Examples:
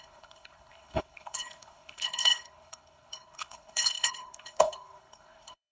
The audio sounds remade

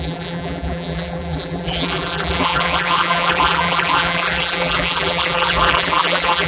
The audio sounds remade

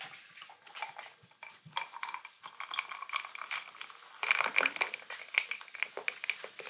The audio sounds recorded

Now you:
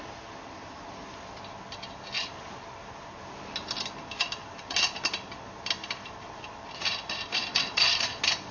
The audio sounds recorded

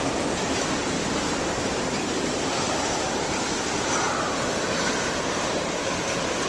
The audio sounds remade